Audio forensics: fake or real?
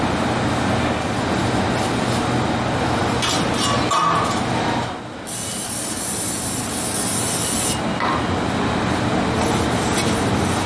real